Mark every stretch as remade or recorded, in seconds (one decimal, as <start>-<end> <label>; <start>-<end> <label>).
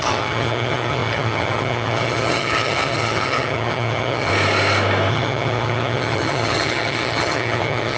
0.0-4.3 remade; 4.3-5.1 recorded; 5.1-8.0 remade